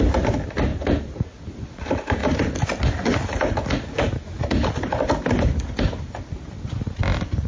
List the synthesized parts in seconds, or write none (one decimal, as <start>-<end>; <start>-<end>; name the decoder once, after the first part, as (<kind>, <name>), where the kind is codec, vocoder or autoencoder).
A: 0.0-2.2 (vocoder, BigVGAN v2); 6.7-7.5